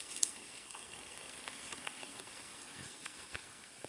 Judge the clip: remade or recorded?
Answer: remade